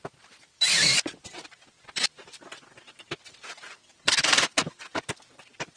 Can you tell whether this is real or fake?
fake